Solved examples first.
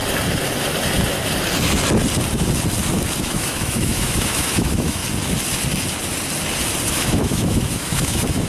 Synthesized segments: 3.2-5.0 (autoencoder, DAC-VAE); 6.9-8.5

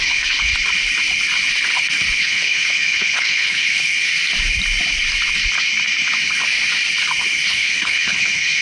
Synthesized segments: 0.0-0.5 (codec, HILCodec); 2.2-4.1; 7.5-8.6

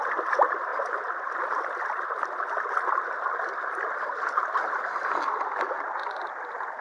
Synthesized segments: none

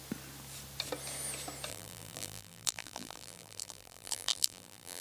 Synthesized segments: 1.7-5.0 (vocoder, BigVGAN v2)

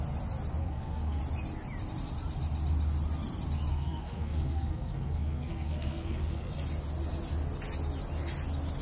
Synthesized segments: 0.6-1.2 (codec, SNAC); 3.7-6.5

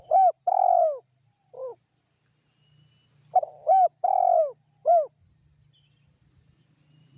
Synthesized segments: none

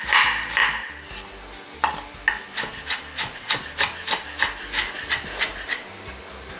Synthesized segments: none